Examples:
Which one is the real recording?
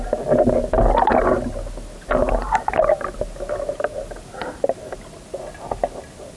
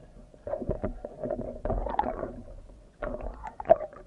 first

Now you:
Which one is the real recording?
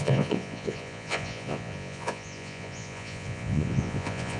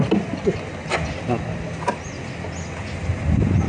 second